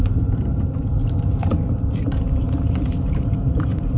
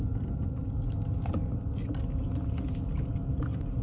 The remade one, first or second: first